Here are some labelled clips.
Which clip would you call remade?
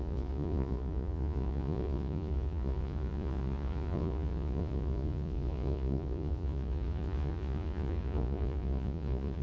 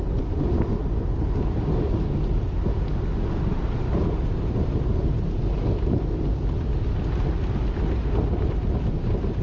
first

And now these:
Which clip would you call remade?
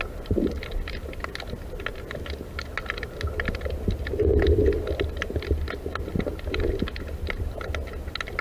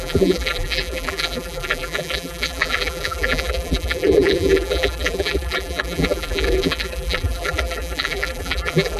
second